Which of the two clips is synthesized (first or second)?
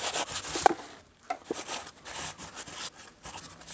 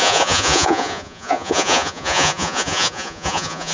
second